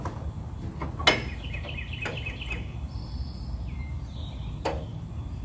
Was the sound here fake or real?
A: real